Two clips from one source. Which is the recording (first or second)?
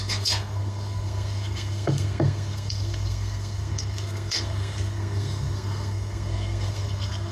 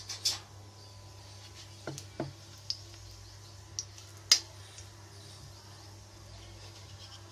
second